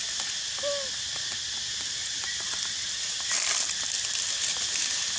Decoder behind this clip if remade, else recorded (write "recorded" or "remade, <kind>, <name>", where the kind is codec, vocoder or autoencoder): recorded